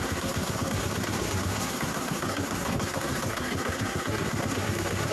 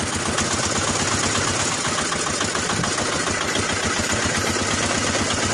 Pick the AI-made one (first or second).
first